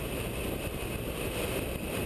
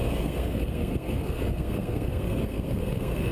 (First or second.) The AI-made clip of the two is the second